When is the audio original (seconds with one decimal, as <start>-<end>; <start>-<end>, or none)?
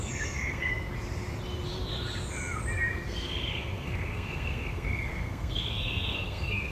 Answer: 0.7-2.9